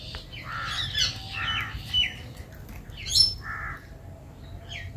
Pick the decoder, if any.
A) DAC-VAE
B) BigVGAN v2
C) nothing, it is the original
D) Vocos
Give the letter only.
C